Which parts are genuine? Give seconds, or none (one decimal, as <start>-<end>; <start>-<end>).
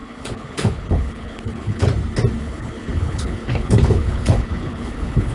1.9-2.4